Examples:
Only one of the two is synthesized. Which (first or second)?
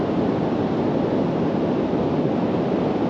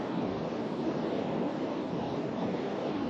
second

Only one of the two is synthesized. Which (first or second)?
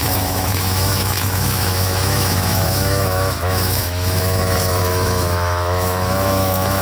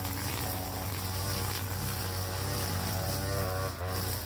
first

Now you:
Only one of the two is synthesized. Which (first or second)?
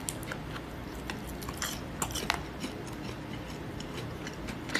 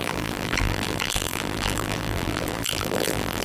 second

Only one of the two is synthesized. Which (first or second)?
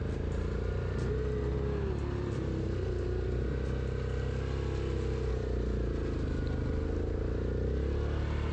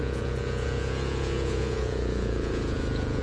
second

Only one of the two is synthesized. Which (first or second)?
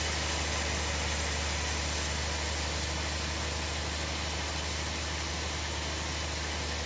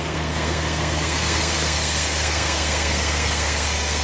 second